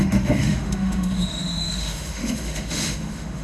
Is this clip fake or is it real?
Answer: fake